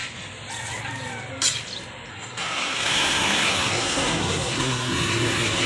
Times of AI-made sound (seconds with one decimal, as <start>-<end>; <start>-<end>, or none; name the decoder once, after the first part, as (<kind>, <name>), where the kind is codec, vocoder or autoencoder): 2.1-5.7 (codec, SNAC)